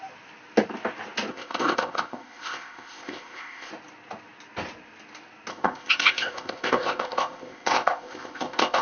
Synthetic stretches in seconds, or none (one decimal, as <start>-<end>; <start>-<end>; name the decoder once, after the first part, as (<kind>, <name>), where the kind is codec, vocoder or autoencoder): 1.3-3.7 (codec, ZipCodec); 5.5-8.8

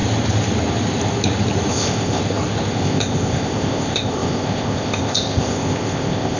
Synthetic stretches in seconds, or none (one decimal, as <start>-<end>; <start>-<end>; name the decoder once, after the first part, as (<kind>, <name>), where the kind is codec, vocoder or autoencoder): 1.7-2.2 (codec, ZipCodec); 2.7-6.4

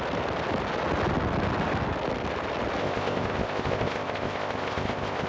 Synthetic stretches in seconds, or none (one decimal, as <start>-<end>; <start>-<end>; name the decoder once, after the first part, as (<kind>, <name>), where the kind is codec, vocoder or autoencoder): 2.8-5.3 (codec, ZipCodec)

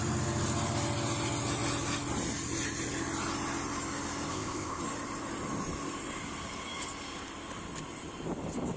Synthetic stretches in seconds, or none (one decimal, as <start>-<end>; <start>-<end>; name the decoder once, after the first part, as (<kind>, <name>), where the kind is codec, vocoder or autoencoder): 4.3-4.8 (codec, ZipCodec)